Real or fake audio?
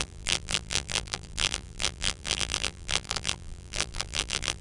fake